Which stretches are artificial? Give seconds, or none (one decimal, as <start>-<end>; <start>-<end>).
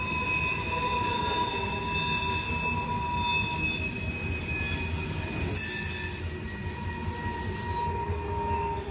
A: none